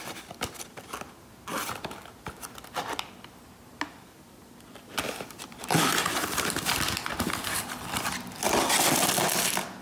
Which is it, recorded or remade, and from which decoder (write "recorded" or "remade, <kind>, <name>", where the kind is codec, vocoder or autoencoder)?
recorded